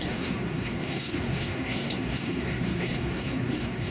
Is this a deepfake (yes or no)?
yes